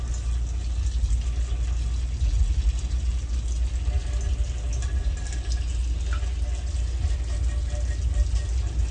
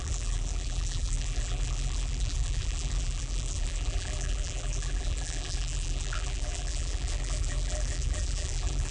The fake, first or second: second